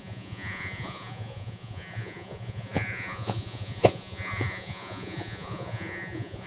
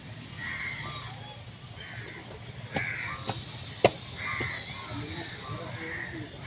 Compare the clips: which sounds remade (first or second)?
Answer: first